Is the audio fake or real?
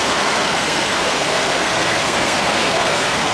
fake